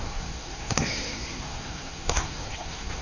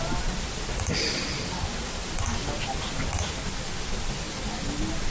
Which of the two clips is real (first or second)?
second